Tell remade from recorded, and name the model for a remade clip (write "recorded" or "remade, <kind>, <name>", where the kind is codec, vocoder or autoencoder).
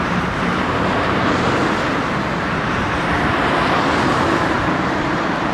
remade, vocoder, BigVGAN v2